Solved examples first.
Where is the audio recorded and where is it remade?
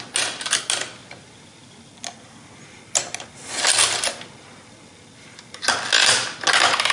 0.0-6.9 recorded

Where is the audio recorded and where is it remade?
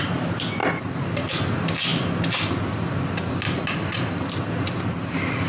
0.0-5.5 recorded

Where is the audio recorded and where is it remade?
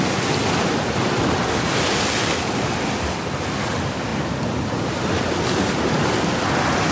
0.0-6.9 recorded